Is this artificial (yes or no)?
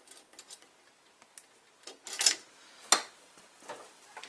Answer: no